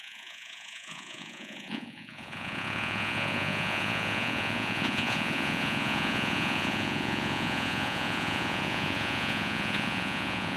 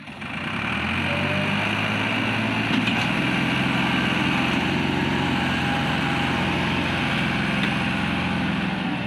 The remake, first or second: first